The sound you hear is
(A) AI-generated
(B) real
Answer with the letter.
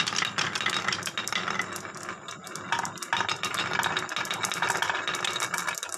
B